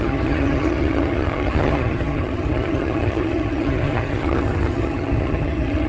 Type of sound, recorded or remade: remade